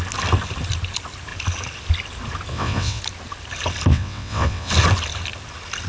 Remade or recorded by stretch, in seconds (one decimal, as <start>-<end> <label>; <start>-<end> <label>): 0.0-2.5 recorded; 2.5-3.0 remade; 3.0-3.9 recorded; 3.9-4.7 remade; 4.7-5.9 recorded